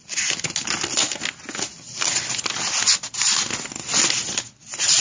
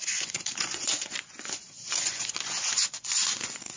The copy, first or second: second